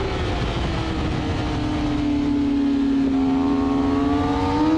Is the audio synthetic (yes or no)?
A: no